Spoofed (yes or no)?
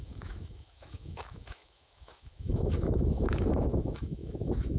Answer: yes